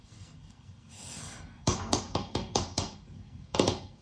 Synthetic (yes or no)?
yes